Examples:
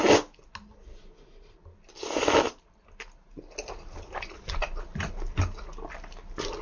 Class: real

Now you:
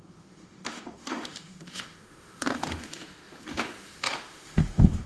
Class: fake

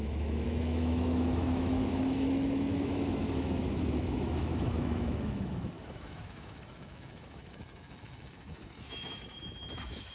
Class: fake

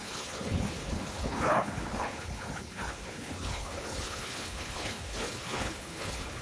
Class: fake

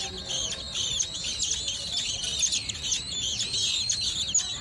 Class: real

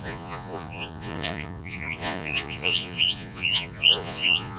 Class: fake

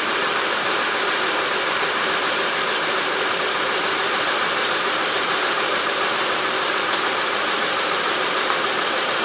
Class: fake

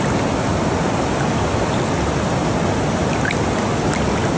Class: real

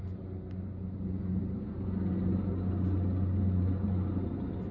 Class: real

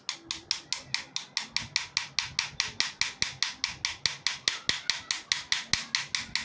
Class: real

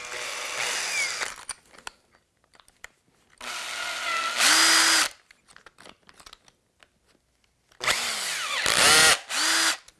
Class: real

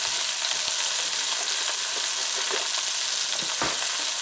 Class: real